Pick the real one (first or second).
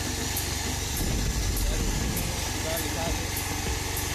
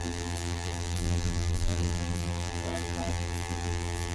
first